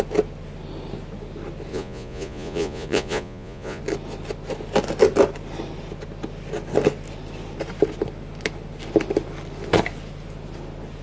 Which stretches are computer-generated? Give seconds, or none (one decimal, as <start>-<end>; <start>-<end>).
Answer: 1.7-3.8